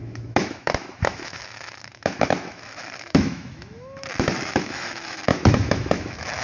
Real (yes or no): no